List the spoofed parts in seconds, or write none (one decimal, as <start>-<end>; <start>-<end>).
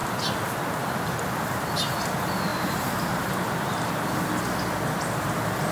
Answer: 2.5-4.3